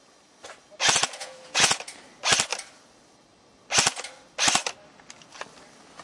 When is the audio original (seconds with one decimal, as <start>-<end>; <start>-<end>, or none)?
0.0-1.2; 1.8-6.0